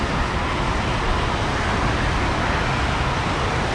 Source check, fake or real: real